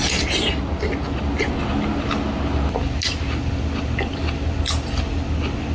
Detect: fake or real real